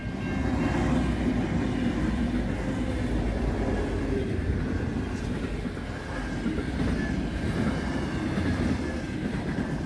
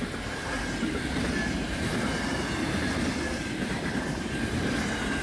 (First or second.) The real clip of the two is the first